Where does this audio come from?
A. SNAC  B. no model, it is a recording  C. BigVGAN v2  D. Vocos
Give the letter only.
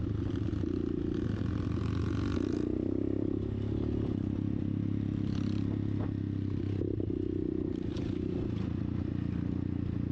B